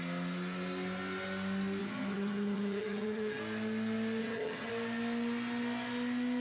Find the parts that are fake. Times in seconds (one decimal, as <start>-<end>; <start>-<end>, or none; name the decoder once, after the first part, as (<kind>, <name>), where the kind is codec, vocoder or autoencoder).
1.8-3.4 (vocoder, HiFi-GAN); 4.2-4.7